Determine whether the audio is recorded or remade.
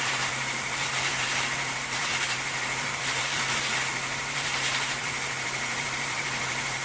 remade